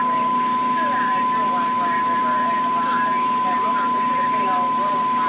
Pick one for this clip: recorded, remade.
recorded